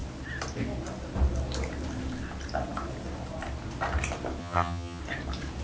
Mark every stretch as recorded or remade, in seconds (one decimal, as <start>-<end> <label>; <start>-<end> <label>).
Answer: 0.0-4.4 recorded; 4.4-5.0 remade; 5.0-5.6 recorded